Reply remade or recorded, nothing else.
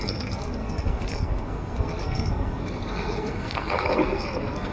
remade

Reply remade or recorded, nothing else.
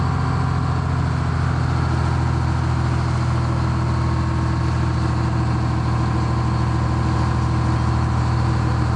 recorded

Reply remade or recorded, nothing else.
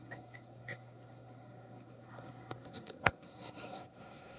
remade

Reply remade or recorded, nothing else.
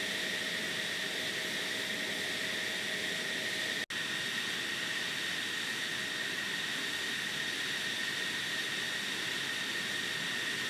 recorded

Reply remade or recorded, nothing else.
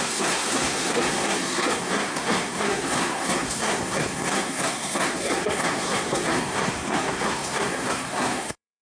remade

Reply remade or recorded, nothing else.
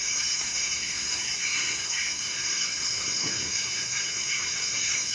remade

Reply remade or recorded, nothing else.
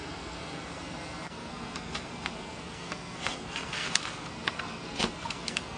remade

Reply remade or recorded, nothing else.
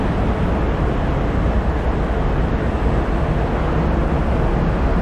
recorded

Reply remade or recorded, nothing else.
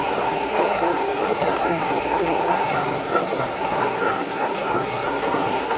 remade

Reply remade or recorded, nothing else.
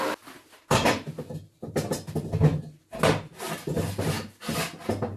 recorded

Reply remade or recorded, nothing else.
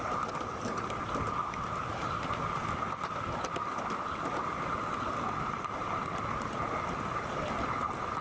recorded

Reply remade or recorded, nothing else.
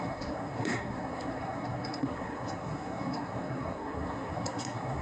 remade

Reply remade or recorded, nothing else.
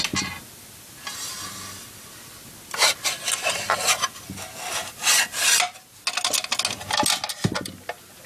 recorded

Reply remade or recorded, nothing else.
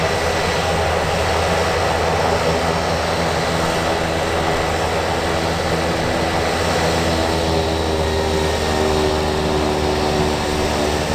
recorded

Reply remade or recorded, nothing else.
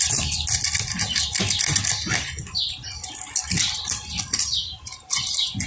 recorded